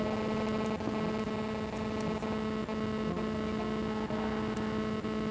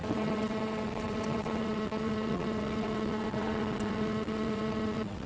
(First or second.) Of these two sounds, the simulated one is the second